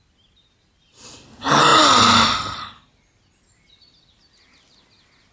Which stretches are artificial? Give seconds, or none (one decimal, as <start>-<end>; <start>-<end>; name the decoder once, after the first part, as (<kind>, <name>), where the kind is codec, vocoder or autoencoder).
none